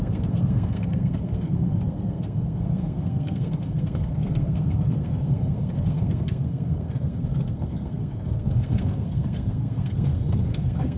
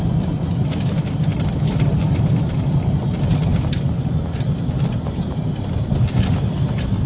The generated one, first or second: first